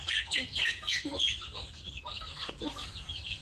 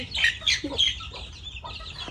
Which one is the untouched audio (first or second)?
second